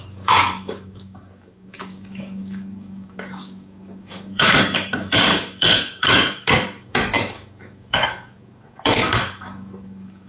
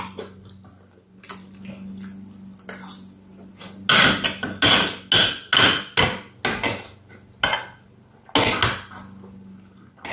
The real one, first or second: second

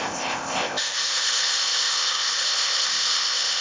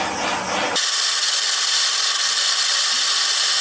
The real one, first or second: second